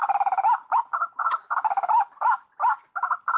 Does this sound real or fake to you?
real